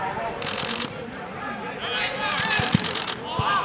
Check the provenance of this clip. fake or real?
real